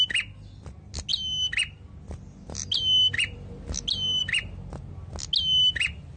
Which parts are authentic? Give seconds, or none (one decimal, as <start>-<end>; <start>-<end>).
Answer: 0.0-6.2